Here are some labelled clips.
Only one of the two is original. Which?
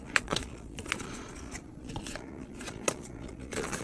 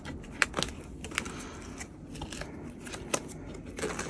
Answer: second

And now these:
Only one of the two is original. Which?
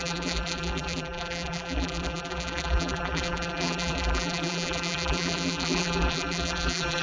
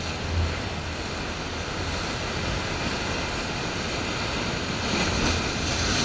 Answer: second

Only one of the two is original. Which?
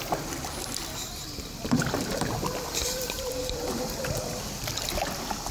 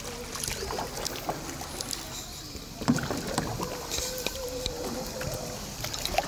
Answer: second